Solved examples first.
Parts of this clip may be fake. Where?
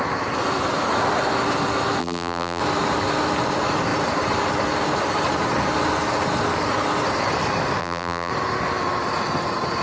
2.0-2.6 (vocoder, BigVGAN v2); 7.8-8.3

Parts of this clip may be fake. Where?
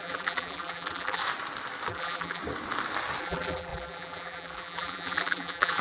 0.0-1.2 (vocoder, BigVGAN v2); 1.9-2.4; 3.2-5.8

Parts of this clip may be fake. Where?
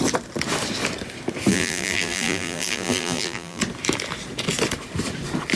1.5-3.6 (vocoder, BigVGAN v2)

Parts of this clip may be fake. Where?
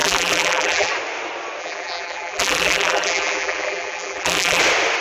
0.0-0.9 (vocoder, BigVGAN v2); 1.6-4.6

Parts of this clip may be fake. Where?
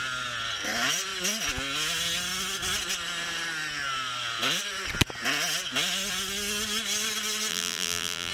7.5-8.3 (vocoder, BigVGAN v2)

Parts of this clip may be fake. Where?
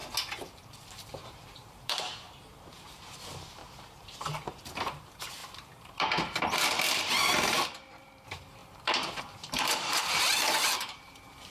0.9-3.6 (vocoder, BigVGAN v2); 4.7-11.5